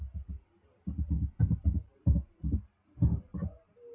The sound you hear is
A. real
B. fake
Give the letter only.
A